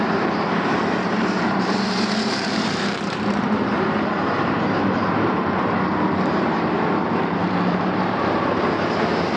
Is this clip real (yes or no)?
no